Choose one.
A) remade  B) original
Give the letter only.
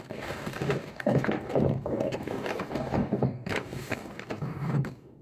A